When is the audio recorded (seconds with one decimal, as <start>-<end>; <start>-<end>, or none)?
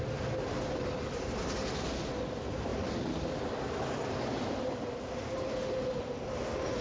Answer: 0.0-6.8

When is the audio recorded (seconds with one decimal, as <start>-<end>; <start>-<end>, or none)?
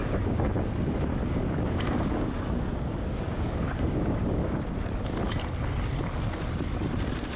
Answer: 0.5-1.2; 4.5-7.4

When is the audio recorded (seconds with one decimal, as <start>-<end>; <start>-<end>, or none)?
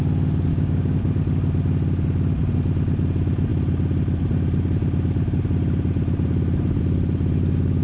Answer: 0.0-0.5; 1.0-7.8